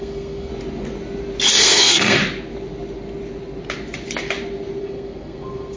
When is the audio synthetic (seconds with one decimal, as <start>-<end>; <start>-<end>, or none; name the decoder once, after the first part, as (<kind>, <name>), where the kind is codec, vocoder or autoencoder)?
0.0-0.5 (codec, SNAC); 1.5-2.2; 4.8-5.8